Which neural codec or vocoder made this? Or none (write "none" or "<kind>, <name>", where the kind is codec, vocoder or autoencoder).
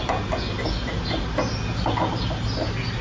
none